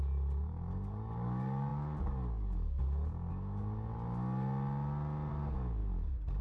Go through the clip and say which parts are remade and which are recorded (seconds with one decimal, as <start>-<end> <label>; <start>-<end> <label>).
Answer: 0.0-3.9 remade; 3.9-5.3 recorded; 5.3-5.8 remade; 5.8-6.4 recorded